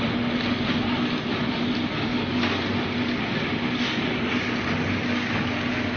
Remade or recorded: recorded